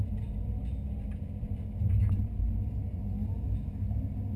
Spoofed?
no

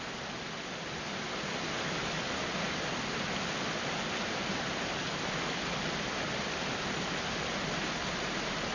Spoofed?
no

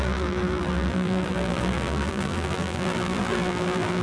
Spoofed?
yes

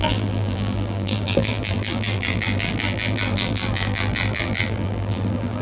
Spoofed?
yes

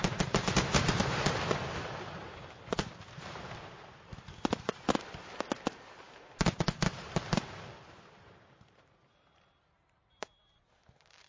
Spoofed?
yes